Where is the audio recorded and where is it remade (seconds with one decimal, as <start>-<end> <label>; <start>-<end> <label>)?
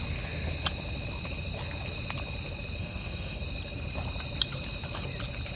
0.0-2.8 recorded; 2.8-3.4 remade; 3.4-5.6 recorded